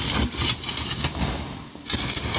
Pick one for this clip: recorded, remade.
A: recorded